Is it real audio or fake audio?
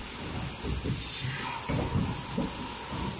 real